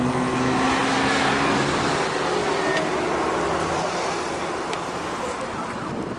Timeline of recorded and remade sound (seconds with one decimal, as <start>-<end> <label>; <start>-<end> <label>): 0.0-6.2 recorded